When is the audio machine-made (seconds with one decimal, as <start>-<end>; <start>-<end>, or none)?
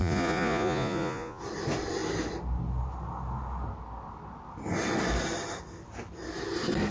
0.0-1.4